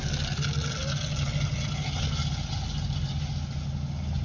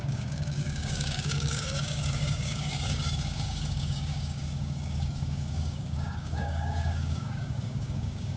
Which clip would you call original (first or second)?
first